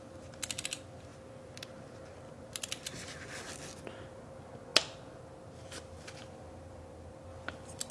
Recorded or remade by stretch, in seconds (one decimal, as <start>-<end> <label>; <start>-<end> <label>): 0.0-7.9 recorded